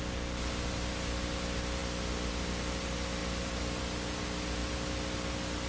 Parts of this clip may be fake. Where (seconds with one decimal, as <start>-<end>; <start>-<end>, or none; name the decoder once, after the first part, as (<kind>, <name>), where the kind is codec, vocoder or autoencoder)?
none